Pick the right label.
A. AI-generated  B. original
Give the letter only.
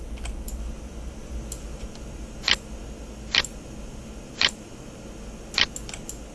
B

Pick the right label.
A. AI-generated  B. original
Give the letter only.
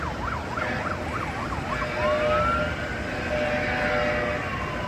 B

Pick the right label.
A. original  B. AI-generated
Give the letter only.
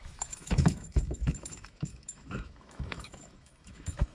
B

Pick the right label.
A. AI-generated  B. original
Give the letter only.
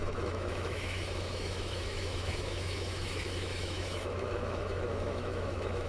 A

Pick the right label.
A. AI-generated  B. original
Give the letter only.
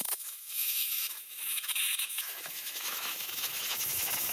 A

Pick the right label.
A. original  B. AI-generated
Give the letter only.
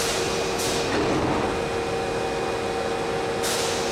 A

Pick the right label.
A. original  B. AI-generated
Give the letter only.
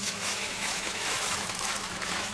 B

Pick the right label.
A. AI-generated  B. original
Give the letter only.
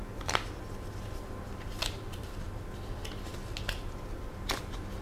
B